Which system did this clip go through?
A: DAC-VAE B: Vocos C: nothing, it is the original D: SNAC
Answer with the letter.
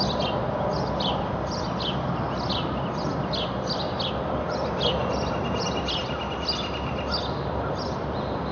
C